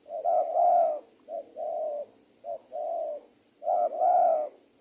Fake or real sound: real